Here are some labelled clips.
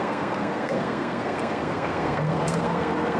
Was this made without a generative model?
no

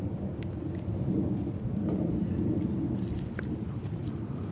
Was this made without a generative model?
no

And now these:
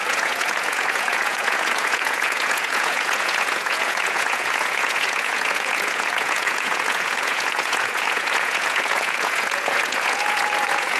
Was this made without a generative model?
no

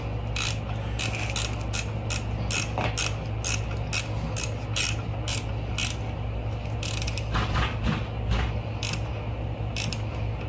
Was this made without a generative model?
yes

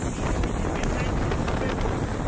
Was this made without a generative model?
yes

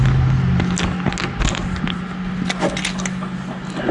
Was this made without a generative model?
yes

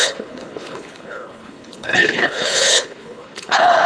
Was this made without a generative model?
no